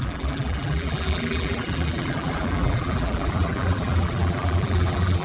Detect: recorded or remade remade